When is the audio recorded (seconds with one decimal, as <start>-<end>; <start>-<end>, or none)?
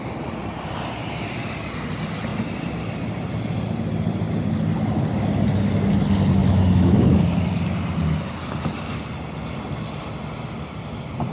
0.0-6.4; 7.2-11.3